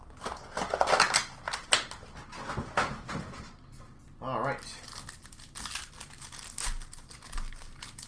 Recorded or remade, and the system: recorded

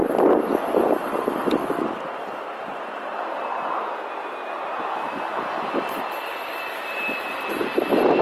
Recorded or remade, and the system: recorded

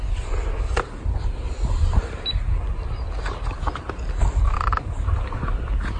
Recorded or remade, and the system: recorded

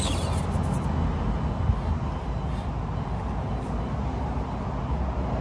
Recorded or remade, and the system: recorded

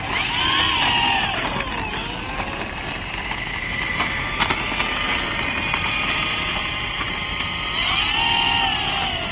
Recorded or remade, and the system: recorded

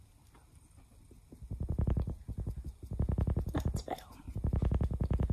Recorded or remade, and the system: recorded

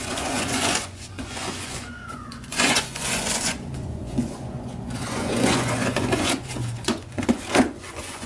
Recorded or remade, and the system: remade, vocoder, Vocos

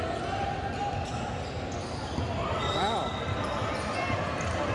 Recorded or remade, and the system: recorded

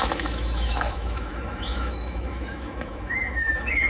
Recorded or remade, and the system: remade, autoencoder, DAC-VAE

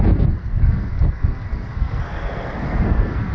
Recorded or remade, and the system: remade, codec, SNAC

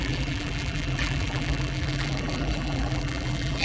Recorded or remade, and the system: remade, vocoder, BigVGAN v2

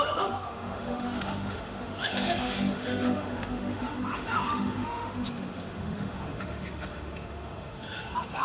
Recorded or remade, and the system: remade, autoencoder, DAC-VAE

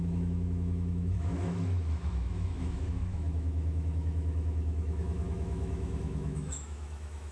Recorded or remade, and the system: remade, autoencoder, DAC-VAE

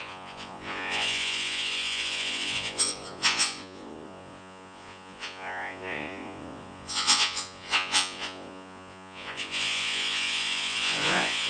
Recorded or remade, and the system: remade, vocoder, Vocos